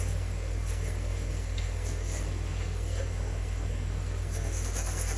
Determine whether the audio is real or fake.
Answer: fake